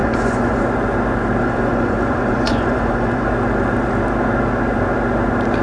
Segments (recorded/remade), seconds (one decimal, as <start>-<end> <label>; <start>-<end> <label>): 0.0-0.6 remade; 0.6-1.4 recorded; 1.4-3.3 remade; 3.3-5.6 recorded